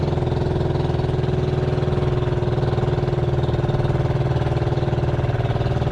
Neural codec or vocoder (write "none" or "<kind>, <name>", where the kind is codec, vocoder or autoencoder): none